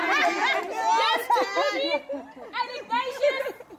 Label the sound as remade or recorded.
recorded